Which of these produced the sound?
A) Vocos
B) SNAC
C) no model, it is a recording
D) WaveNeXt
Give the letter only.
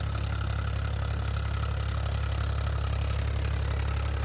C